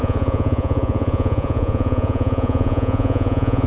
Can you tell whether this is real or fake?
fake